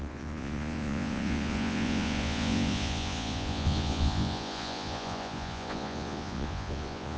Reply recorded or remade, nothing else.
remade